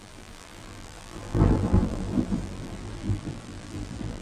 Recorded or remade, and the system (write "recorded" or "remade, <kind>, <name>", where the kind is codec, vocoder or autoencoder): remade, vocoder, BigVGAN v2